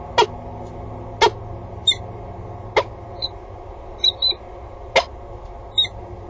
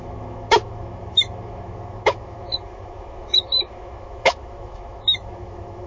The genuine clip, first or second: first